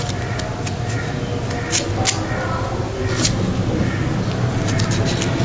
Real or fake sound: real